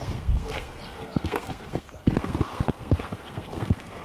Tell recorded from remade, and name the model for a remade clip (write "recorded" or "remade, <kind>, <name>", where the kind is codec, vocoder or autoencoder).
remade, codec, SNAC